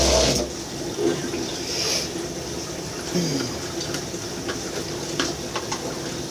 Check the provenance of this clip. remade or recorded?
recorded